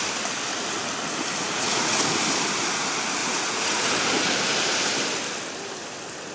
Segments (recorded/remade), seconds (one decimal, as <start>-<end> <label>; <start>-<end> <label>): 0.0-1.4 recorded; 1.4-2.0 remade; 2.0-3.2 recorded; 3.2-3.9 remade; 3.9-6.3 recorded

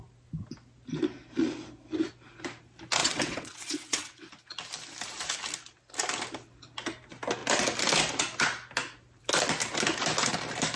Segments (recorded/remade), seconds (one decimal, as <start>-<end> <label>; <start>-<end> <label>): 0.0-3.0 recorded; 3.0-4.3 remade; 4.3-10.8 recorded

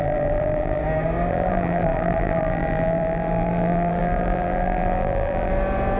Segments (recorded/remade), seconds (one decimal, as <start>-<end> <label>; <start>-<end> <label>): 0.0-0.8 remade; 0.8-1.3 recorded; 1.3-5.5 remade; 5.5-6.0 recorded